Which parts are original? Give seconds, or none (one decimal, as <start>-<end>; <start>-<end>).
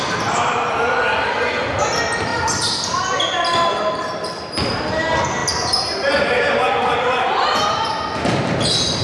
0.0-9.0